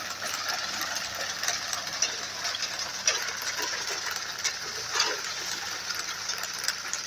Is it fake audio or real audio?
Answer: real